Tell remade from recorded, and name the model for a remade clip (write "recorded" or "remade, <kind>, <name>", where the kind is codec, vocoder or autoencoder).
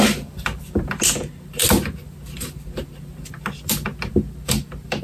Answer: remade, vocoder, BigVGAN v2